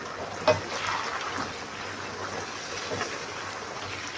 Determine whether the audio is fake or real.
real